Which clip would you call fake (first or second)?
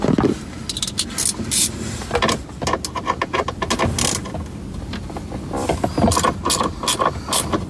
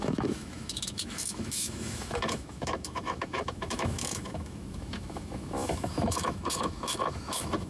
second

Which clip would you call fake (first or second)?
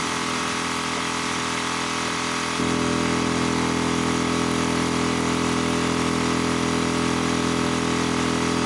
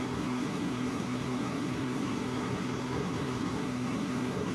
second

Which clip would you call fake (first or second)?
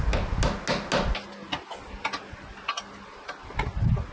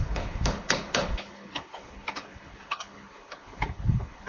second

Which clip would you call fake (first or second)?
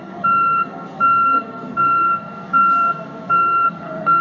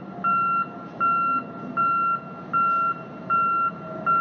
first